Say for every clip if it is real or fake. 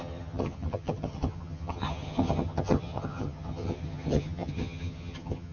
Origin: fake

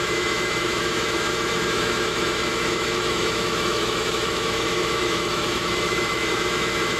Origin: fake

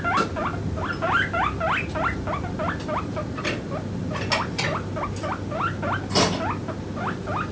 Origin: real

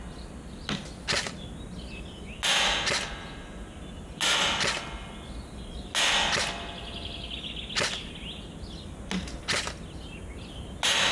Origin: real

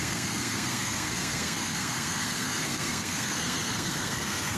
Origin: fake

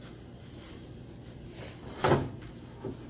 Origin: real